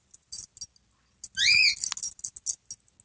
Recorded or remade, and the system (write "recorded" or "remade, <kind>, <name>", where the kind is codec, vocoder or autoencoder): recorded